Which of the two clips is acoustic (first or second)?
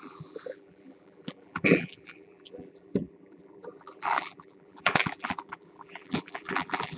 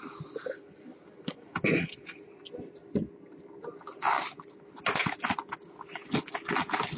second